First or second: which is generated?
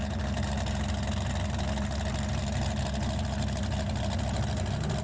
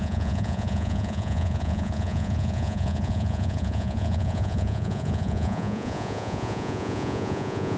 second